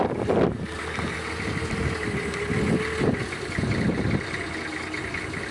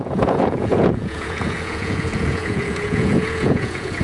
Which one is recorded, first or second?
first